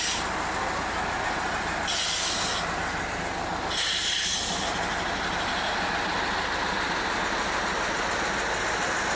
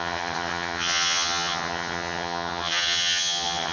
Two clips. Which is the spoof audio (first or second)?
second